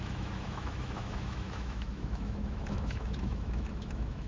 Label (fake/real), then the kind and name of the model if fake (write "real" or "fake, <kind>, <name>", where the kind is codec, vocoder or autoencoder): fake, autoencoder, DAC-VAE